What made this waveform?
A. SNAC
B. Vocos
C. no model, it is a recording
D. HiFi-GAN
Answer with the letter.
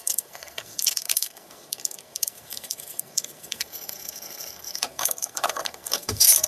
A